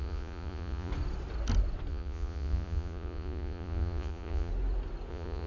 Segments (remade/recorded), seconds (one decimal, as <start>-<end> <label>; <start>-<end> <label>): 0.0-0.9 remade; 0.9-1.9 recorded; 1.9-4.5 remade; 4.5-5.1 recorded; 5.1-5.5 remade